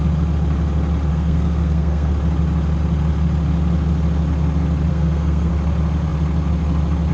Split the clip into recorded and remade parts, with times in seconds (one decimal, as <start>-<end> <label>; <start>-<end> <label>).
0.0-1.1 recorded; 1.1-2.1 remade; 2.1-4.9 recorded; 4.9-5.5 remade; 5.5-7.1 recorded